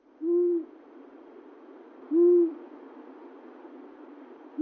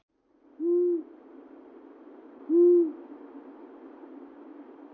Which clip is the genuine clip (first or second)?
second